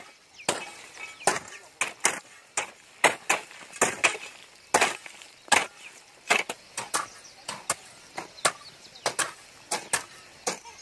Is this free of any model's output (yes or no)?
yes